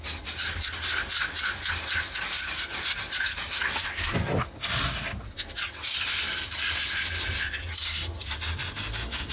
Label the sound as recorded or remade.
recorded